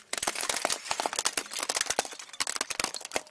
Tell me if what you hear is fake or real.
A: real